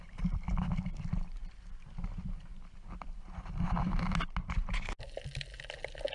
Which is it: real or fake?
real